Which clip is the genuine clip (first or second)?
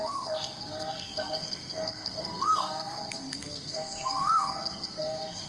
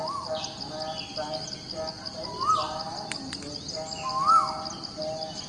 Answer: second